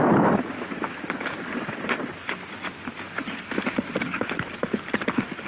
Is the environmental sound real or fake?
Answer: fake